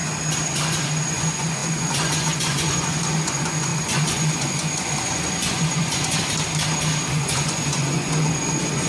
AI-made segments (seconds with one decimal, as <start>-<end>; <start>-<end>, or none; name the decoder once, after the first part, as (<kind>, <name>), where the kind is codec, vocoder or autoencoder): 0.5-6.2 (vocoder, Vocos); 7.1-8.9